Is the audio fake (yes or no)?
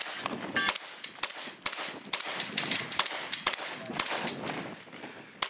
no